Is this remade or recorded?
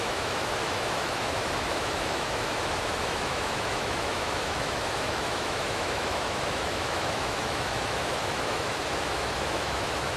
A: remade